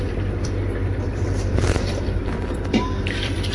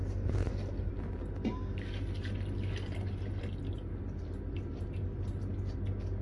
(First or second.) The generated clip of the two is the first